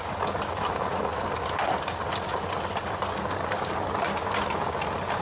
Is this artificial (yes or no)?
no